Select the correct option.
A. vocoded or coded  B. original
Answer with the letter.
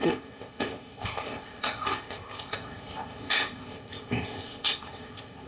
A